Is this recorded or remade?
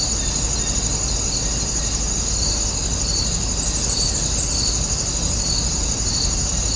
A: recorded